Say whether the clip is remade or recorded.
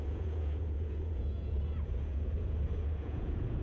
remade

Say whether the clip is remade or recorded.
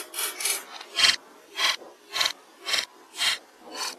recorded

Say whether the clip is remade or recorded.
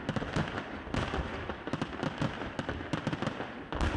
recorded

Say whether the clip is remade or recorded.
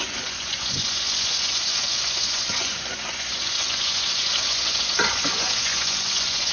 remade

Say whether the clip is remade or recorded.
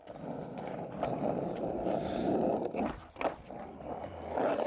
recorded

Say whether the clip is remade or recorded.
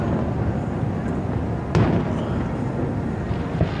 recorded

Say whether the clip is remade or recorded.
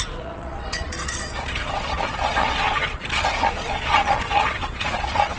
remade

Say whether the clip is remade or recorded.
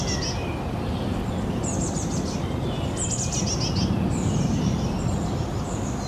recorded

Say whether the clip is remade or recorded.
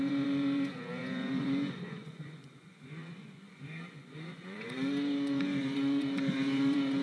remade